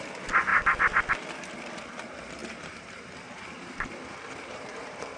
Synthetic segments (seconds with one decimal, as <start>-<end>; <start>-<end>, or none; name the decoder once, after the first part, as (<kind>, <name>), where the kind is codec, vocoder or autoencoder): 0.0-0.5 (vocoder, BigVGAN v2); 1.9-5.2